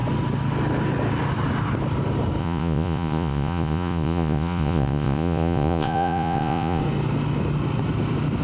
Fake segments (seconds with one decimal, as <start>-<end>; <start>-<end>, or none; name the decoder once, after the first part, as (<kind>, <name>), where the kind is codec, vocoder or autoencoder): 2.4-6.8 (vocoder, Vocos)